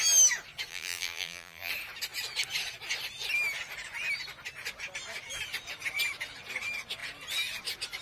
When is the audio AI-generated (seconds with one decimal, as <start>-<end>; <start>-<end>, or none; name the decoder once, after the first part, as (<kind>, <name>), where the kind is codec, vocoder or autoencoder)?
0.7-1.7 (vocoder, BigVGAN v2)

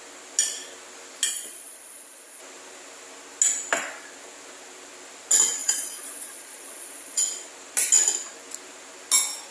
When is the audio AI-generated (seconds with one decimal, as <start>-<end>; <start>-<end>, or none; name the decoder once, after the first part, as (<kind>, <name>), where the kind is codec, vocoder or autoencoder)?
1.3-2.4 (vocoder, Vocos); 5.6-7.3

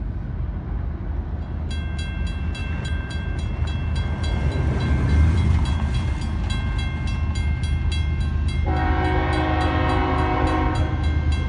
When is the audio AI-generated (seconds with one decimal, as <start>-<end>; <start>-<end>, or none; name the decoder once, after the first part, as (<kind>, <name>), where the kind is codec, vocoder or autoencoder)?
2.6-6.1 (vocoder, BigVGAN v2)

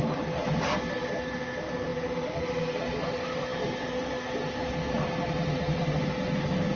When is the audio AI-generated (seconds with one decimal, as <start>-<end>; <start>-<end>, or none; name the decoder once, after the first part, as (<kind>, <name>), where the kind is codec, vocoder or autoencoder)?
none

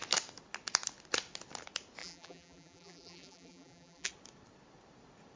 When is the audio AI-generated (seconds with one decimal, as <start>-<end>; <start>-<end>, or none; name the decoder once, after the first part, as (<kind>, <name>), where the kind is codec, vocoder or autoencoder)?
2.0-4.1 (vocoder, BigVGAN v2)

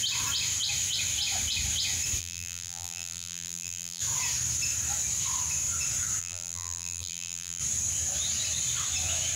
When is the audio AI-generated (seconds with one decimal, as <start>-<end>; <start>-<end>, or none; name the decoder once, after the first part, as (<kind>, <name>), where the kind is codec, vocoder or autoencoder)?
2.2-4.0 (vocoder, BigVGAN v2); 6.2-7.6

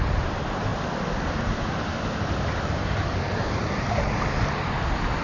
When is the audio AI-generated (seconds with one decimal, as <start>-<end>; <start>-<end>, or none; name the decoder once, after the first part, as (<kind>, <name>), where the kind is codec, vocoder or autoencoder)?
none

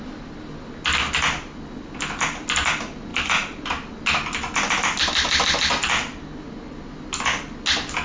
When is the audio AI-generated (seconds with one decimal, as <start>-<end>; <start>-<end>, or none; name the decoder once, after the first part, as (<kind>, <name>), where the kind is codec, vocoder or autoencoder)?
none